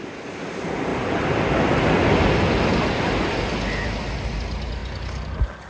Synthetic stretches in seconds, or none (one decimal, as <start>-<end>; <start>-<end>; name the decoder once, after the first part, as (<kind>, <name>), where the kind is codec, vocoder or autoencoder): none